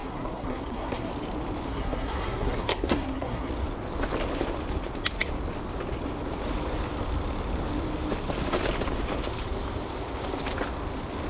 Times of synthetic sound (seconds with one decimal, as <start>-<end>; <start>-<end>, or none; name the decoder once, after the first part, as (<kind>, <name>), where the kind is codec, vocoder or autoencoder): 0.0-1.1 (codec, SNAC); 1.7-3.5